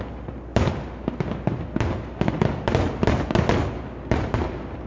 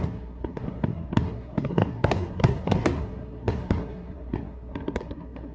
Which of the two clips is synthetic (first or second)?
second